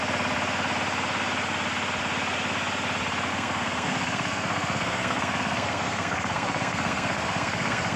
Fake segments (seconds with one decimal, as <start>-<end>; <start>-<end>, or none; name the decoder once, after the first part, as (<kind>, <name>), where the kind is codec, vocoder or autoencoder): 3.3-8.0 (codec, SNAC)